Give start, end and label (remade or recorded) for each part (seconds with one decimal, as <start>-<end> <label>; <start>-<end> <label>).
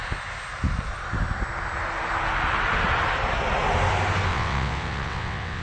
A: 0.0-4.3 recorded; 4.3-5.6 remade